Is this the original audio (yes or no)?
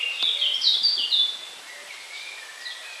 yes